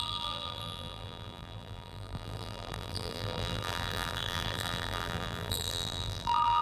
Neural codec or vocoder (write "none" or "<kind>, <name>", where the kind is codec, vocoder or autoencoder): vocoder, BigVGAN v2